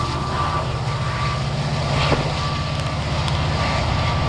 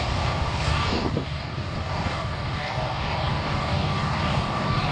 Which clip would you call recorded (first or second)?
first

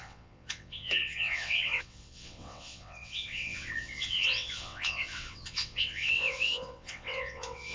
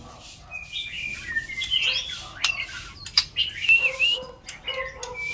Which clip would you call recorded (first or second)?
second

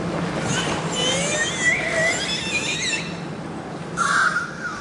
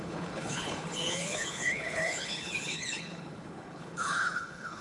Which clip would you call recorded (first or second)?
first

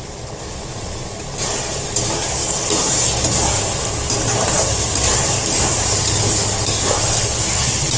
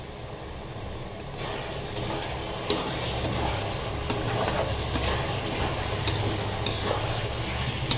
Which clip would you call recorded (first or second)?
second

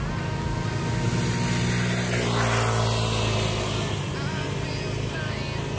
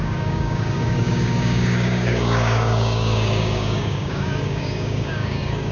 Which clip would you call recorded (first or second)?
first